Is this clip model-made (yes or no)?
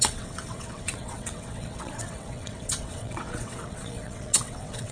yes